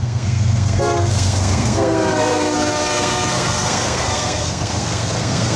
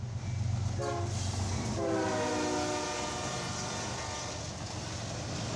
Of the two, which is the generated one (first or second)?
first